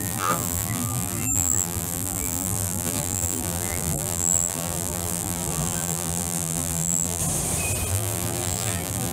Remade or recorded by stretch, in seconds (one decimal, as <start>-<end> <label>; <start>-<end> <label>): 0.0-7.2 remade; 7.2-7.9 recorded; 7.9-9.1 remade